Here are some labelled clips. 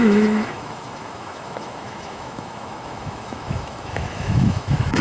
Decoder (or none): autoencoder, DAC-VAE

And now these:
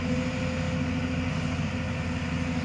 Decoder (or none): none